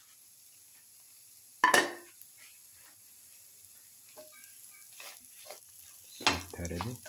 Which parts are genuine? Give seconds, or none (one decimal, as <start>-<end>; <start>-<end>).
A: 0.0-7.1